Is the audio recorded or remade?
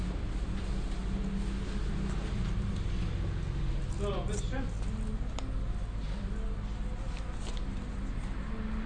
recorded